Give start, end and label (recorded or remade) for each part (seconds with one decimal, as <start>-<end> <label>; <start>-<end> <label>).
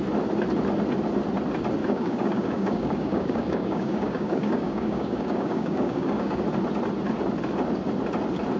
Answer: 0.0-1.8 recorded; 1.8-6.4 remade; 6.4-8.6 recorded